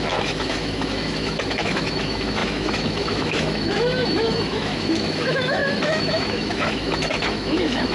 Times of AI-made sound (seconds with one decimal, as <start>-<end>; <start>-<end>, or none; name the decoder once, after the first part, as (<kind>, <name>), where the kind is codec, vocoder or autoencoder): 0.0-7.9 (autoencoder, DAC-VAE)